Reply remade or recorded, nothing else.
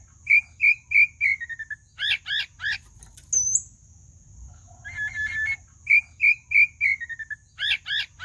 recorded